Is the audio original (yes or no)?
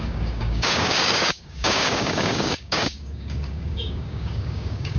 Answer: no